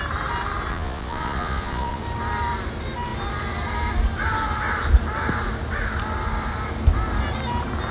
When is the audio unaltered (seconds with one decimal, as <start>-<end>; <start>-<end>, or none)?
0.0-0.7; 2.0-7.9